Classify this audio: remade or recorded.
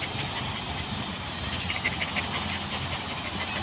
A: recorded